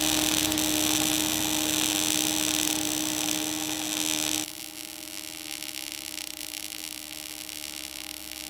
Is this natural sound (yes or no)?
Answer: yes